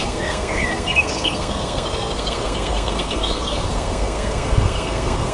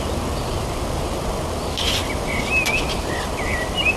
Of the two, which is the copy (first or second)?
first